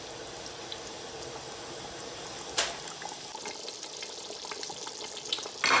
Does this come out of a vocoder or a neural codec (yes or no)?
no